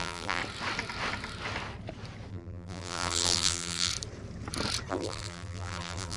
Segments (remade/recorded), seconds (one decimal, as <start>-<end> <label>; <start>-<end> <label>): 0.0-0.4 remade; 0.4-2.3 recorded; 2.3-3.9 remade; 3.9-4.9 recorded; 4.9-6.2 remade